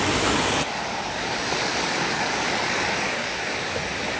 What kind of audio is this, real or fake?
fake